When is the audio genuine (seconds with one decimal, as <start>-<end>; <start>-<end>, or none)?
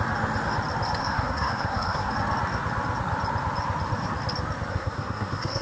0.0-1.0; 2.1-4.7